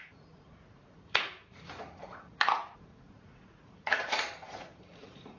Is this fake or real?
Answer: fake